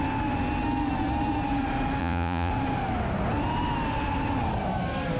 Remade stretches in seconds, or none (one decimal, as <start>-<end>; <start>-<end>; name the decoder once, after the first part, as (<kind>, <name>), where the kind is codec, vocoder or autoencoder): 2.0-2.5 (vocoder, Vocos)